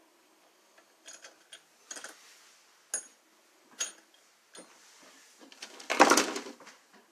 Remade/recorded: recorded